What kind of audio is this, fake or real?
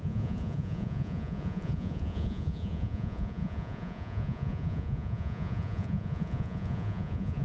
fake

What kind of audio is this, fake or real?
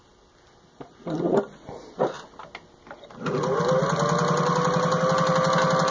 real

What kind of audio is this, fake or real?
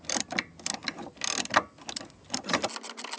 real